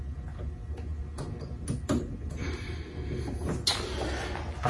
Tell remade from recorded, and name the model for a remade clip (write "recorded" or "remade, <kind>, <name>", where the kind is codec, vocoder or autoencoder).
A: recorded